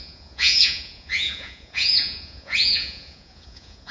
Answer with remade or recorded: remade